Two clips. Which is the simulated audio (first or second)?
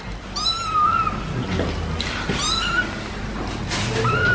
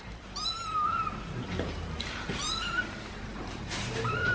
second